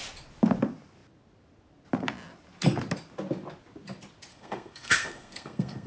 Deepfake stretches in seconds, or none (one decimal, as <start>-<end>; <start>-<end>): 4.3-5.9